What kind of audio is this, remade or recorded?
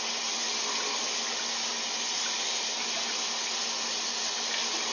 recorded